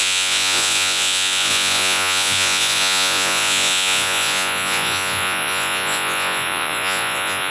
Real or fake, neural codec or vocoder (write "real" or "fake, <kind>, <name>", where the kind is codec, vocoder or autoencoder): fake, vocoder, Vocos